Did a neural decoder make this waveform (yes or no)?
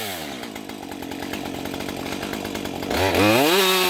no